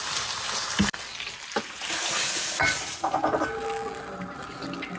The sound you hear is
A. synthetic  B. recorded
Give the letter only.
B